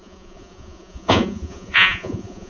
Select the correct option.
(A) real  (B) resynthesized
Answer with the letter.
B